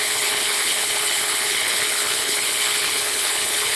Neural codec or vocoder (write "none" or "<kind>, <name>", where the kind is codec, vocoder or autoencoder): codec, HILCodec